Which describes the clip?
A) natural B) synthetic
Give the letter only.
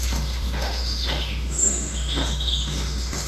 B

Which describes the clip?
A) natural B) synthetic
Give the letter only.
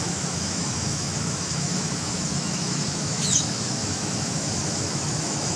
B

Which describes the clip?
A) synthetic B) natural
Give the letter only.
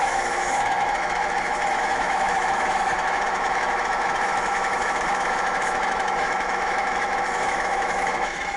A